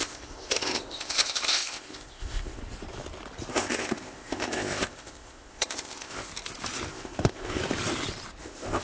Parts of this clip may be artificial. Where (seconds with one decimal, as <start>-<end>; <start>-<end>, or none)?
0.0-2.6; 3.5-6.3; 6.9-7.6; 8.4-8.8